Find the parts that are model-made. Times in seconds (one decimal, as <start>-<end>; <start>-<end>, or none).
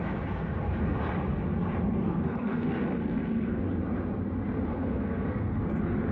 2.0-3.6; 4.7-5.6